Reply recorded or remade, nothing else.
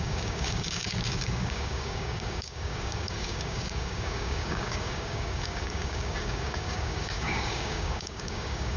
remade